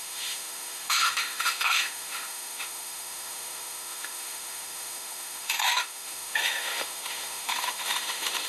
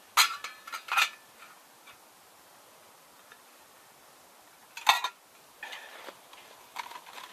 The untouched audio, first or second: second